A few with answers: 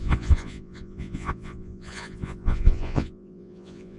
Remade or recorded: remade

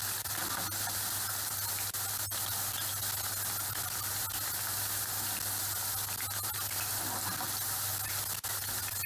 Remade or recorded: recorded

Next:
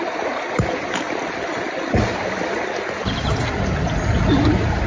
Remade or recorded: recorded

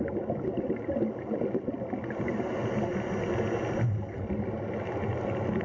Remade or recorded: recorded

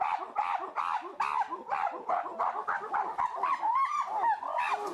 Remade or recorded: recorded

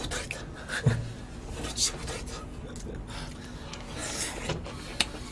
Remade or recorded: recorded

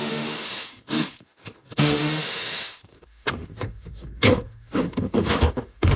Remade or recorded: remade